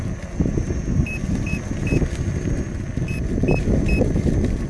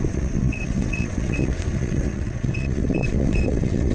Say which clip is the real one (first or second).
first